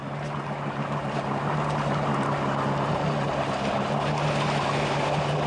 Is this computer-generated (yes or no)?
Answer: no